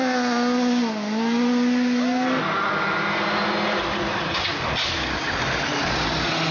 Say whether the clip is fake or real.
real